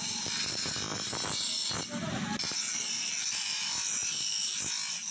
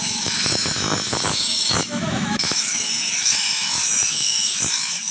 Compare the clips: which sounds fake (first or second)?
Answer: second